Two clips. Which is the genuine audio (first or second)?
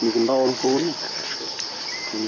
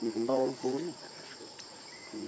first